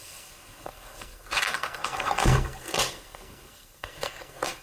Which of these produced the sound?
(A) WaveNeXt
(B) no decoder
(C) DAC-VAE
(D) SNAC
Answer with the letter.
D